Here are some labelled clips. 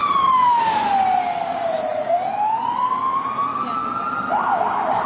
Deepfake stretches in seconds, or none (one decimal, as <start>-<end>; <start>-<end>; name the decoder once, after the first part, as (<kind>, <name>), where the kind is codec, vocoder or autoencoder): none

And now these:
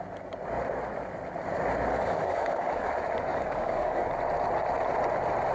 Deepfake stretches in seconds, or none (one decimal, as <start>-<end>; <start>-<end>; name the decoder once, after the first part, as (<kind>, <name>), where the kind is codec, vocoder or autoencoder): 1.9-2.9 (codec, DAC); 3.3-4.1

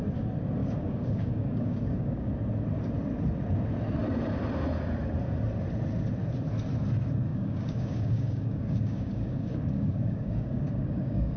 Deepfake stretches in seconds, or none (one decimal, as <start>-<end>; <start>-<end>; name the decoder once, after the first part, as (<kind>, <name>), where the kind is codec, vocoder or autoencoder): 0.6-2.3 (codec, DAC); 7.3-11.4

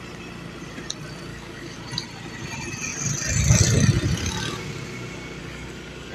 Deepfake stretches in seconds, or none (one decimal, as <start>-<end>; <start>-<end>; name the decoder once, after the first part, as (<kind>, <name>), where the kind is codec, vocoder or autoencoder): 1.3-1.8 (codec, DAC); 5.4-6.1

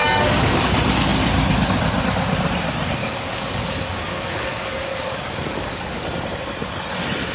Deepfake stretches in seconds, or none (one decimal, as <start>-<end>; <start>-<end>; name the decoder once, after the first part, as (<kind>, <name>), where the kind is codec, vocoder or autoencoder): 0.0-0.7 (codec, DAC); 3.0-6.0